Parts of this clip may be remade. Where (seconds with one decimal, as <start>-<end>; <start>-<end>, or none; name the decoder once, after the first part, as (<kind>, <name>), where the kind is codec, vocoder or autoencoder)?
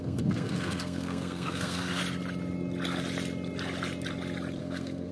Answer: 0.0-2.0 (codec, SNAC); 4.6-5.1